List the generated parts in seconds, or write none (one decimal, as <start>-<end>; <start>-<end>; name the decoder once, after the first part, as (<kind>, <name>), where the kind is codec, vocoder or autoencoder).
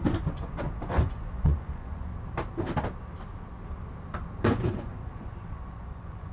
0.0-2.1 (vocoder, Vocos); 4.4-6.3